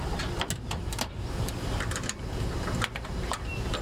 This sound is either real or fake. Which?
real